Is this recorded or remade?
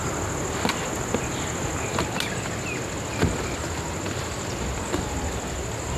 recorded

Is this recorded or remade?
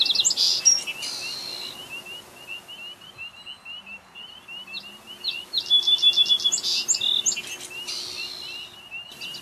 recorded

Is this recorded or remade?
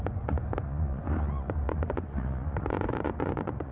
remade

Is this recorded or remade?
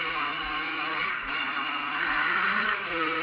remade